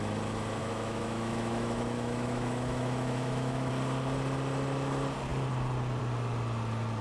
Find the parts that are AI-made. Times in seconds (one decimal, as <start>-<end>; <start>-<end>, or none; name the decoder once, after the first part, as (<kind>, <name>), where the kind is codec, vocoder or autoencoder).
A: 0.6-3.7 (autoencoder, DAC-VAE)